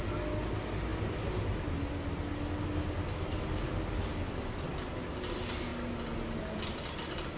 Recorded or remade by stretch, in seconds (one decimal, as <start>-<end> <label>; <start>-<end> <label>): 0.0-7.4 recorded